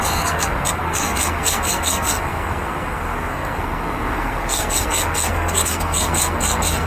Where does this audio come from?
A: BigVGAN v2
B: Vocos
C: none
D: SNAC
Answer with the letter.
D